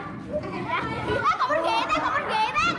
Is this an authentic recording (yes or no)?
yes